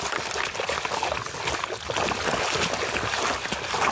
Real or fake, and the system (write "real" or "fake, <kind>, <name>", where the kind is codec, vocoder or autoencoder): real